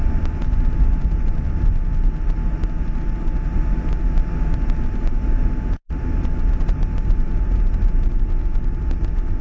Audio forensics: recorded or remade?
recorded